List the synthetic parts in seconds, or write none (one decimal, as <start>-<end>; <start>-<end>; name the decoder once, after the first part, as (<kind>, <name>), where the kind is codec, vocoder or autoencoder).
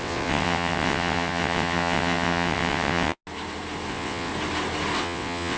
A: 0.0-3.2 (vocoder, WaveNeXt); 3.9-4.3; 5.0-5.6